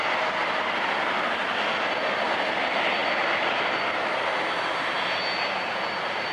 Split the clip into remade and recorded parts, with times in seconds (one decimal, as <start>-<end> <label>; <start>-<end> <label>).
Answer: 0.0-6.3 recorded